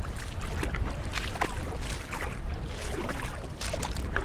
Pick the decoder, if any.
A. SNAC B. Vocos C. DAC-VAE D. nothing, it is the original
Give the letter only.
D